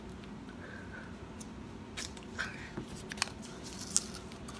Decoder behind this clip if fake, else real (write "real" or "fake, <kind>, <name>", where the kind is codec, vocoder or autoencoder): real